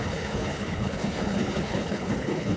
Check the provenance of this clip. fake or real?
fake